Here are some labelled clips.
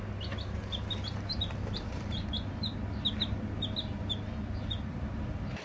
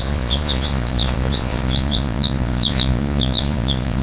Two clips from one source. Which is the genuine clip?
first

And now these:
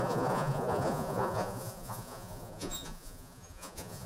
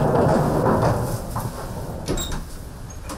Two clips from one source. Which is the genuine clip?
second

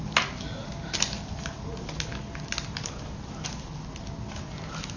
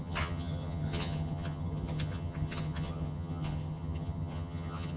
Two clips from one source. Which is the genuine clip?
first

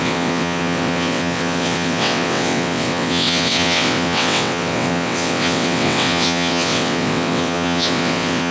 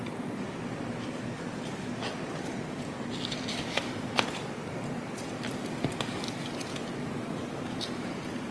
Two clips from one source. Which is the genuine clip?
second